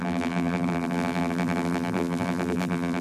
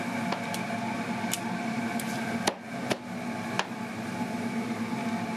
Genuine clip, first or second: second